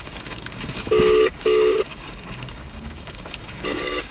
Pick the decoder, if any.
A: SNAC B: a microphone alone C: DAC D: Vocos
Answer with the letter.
C